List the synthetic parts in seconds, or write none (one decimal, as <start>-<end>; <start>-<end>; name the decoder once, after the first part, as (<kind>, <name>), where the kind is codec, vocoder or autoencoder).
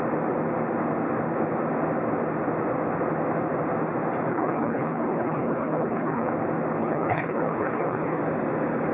4.3-6.3 (codec, HILCodec); 6.8-8.2